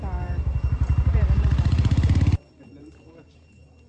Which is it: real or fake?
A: fake